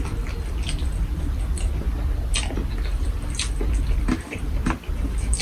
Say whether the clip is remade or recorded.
recorded